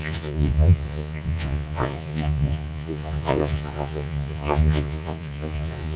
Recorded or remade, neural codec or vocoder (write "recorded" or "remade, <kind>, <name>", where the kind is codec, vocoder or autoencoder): remade, vocoder, Vocos